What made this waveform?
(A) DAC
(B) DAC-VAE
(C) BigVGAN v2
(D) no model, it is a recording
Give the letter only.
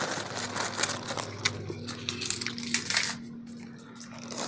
D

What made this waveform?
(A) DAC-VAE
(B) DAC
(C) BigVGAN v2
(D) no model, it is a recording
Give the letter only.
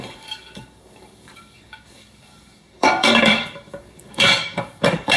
B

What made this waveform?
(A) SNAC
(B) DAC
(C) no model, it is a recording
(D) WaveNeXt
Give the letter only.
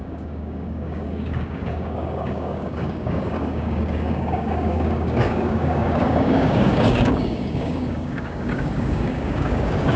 B